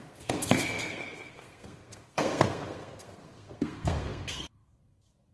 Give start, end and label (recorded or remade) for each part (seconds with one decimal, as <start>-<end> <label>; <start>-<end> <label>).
0.0-5.3 remade